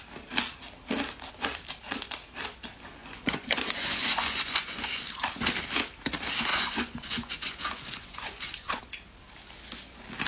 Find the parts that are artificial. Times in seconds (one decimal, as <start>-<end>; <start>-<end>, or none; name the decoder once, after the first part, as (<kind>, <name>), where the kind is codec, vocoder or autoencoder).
3.0-5.0 (vocoder, Vocos); 6.5-8.8